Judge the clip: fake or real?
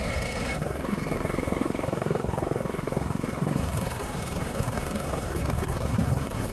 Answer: fake